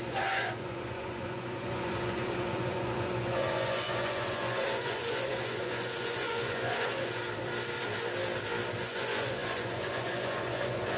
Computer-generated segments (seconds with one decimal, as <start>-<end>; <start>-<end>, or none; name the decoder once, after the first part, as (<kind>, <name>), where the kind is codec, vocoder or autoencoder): 0.0-7.2 (vocoder, Vocos); 8.8-11.0